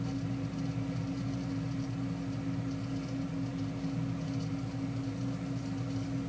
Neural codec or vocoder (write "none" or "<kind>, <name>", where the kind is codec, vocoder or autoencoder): none